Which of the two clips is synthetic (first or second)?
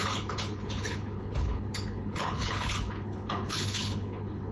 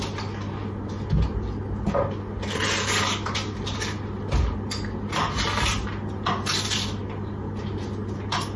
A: first